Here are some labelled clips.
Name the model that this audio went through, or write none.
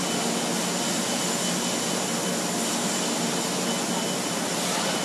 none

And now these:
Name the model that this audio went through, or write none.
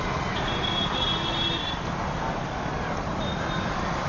none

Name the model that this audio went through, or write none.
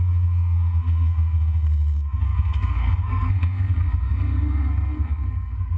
codec, SNAC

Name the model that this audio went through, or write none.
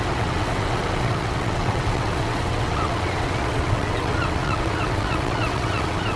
vocoder, WaveNeXt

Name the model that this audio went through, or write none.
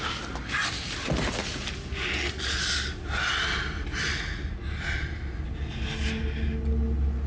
none